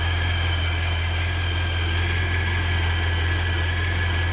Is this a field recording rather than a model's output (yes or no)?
yes